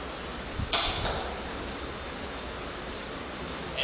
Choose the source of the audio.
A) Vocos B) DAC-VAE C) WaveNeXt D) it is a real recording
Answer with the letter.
D